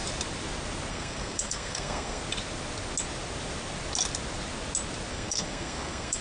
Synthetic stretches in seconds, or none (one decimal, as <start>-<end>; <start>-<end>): 0.9-2.2; 5.1-6.2